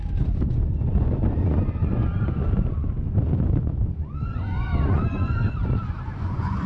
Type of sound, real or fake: fake